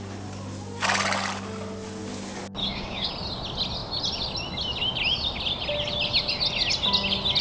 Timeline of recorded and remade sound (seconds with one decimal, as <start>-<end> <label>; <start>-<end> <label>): 0.0-2.6 recorded; 2.6-3.1 remade; 3.1-7.4 recorded